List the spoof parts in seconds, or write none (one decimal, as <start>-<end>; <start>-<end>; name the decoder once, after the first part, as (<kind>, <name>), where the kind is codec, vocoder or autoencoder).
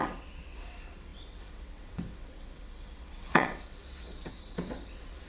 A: 0.0-5.3 (vocoder, WaveNeXt)